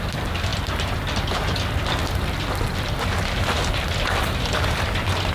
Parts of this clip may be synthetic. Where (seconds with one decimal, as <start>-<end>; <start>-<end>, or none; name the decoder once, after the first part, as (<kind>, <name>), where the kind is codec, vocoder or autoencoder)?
none